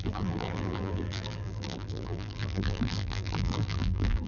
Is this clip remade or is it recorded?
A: remade